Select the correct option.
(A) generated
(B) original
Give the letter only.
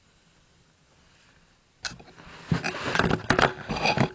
B